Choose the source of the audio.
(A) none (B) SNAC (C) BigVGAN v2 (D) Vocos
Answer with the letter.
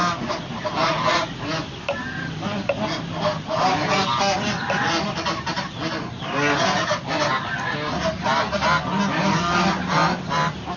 A